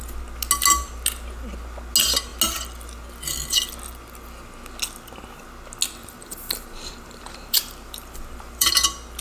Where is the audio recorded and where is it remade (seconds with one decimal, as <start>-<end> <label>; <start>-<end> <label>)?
0.0-6.0 recorded; 6.0-8.7 remade; 8.7-9.2 recorded